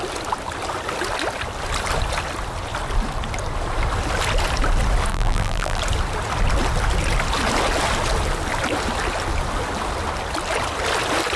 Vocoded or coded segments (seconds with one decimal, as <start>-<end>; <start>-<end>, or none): 5.1-5.8